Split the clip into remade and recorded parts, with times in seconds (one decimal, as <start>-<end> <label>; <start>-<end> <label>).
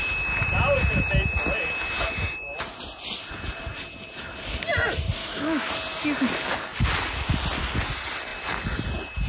0.0-5.2 recorded; 5.2-5.7 remade; 5.7-9.3 recorded